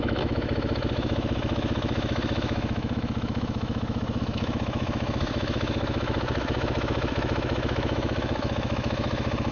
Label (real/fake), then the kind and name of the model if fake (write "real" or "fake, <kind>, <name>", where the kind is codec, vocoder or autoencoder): fake, autoencoder, DAC-VAE